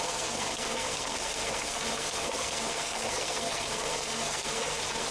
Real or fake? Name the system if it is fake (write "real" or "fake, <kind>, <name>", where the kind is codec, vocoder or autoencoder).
fake, codec, SNAC